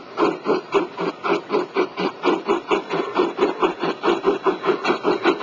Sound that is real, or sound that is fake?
real